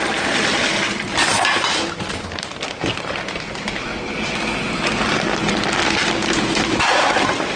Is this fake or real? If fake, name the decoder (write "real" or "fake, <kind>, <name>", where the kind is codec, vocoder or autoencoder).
real